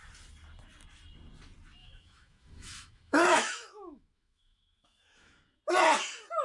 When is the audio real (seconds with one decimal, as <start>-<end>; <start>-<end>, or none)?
0.0-1.8; 5.6-6.4